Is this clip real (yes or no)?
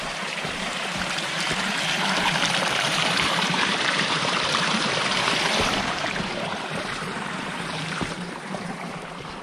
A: no